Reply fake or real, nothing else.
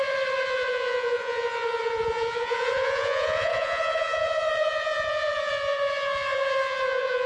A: fake